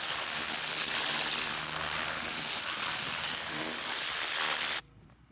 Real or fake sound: real